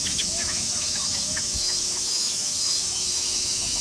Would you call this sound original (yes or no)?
no